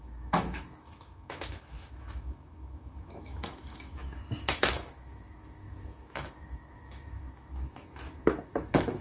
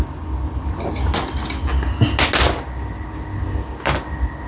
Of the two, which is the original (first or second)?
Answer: second